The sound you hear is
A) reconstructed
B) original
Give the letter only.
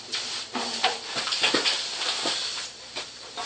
A